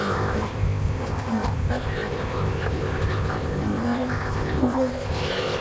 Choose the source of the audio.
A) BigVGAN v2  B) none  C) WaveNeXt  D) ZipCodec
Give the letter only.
D